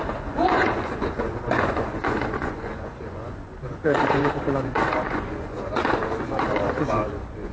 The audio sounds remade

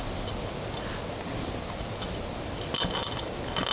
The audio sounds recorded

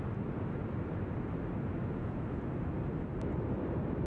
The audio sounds recorded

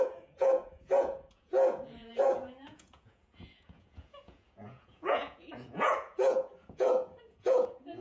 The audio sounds remade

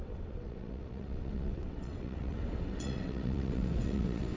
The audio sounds remade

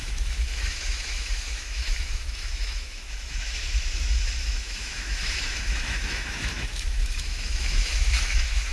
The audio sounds remade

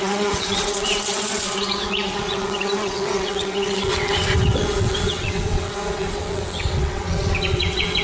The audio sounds remade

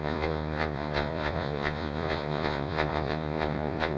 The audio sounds remade